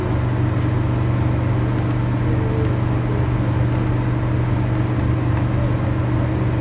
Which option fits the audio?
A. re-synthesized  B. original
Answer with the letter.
B